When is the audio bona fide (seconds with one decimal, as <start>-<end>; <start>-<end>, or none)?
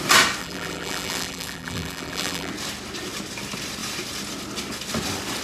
0.0-0.4; 2.5-5.4